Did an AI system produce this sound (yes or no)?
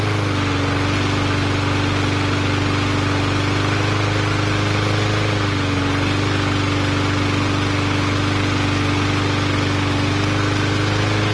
no